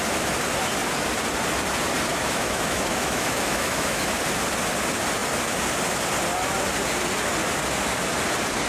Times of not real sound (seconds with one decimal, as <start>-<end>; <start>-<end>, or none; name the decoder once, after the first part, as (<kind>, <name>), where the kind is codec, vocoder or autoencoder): 2.1-4.2 (autoencoder, DAC-VAE)